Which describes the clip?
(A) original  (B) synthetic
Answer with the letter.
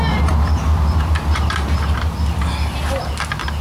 A